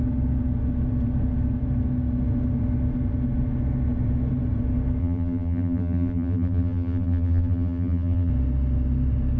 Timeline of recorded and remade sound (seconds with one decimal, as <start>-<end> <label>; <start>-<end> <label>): 0.0-5.0 recorded; 5.0-8.3 remade; 8.3-9.4 recorded